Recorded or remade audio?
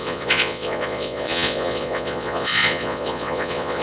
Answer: remade